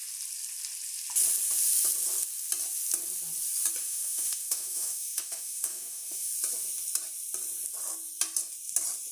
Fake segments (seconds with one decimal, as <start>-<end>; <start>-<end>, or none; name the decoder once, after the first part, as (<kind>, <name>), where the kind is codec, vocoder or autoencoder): 3.8-6.3 (autoencoder, DAC-VAE)